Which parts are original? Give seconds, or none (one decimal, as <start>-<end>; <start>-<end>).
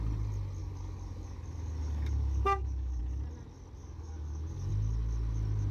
0.0-0.6; 3.0-3.8; 4.7-5.7